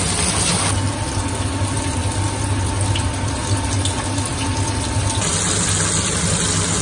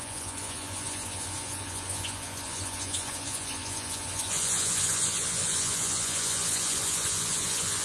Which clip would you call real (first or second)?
first